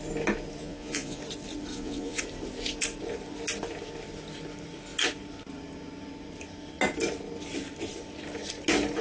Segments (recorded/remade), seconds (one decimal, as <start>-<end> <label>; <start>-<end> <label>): 0.0-0.6 recorded; 0.6-1.2 remade; 1.2-1.7 recorded; 1.7-2.2 remade; 2.2-9.0 recorded